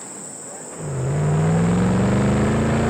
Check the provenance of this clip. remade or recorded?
recorded